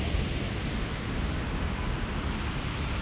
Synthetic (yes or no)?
no